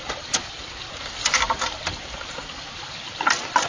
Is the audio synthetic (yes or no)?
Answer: no